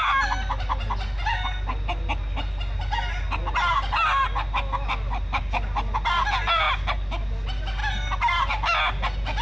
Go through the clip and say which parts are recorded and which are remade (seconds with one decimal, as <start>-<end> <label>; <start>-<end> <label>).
0.0-9.4 recorded